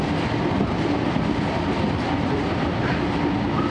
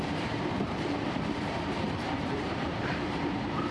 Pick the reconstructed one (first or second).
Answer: second